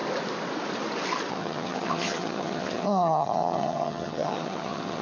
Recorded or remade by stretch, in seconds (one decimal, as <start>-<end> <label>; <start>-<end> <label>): 0.0-1.3 recorded; 1.3-5.0 remade